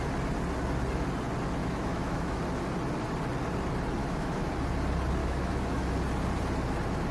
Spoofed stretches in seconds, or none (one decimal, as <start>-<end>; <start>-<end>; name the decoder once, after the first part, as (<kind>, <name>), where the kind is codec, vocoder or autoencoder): 1.6-2.4 (autoencoder, DAC-VAE); 4.0-4.5; 5.2-5.9